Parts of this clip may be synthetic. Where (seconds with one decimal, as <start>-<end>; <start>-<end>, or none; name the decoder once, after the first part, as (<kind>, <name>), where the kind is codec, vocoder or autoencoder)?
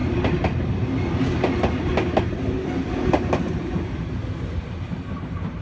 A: none